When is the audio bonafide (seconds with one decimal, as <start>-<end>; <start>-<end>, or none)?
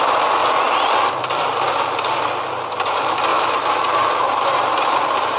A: 0.0-3.3